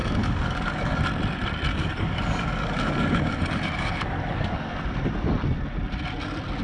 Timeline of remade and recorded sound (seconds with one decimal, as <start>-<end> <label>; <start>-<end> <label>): 0.0-1.0 remade; 1.0-1.7 recorded; 1.7-4.7 remade; 4.7-6.6 recorded